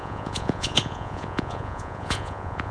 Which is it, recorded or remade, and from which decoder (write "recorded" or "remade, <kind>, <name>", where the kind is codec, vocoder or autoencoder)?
remade, vocoder, Vocos